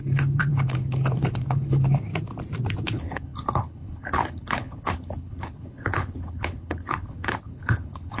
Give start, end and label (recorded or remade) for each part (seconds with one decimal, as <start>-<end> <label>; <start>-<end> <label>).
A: 0.0-2.1 remade; 2.1-2.8 recorded; 2.8-8.2 remade